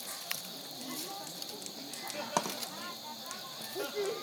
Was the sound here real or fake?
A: real